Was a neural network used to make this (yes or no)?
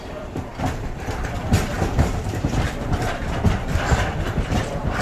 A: yes